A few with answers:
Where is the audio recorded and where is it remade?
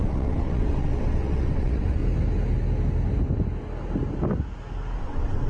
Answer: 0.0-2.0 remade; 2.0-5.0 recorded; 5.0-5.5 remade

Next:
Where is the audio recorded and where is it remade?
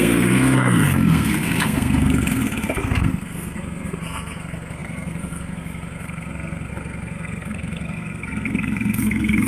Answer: 0.0-9.5 remade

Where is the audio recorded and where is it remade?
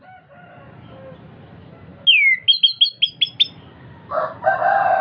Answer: 0.0-5.0 recorded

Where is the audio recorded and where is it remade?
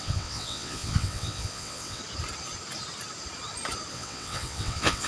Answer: 0.0-2.0 remade; 2.0-3.9 recorded; 3.9-5.1 remade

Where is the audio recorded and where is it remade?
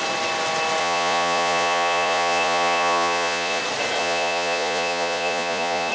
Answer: 0.0-0.8 recorded; 0.8-3.6 remade; 3.6-4.0 recorded; 4.0-5.9 remade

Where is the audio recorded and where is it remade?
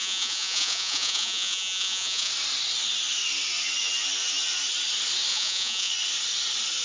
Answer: 0.0-2.3 remade; 2.3-5.3 recorded; 5.3-5.9 remade; 5.9-6.8 recorded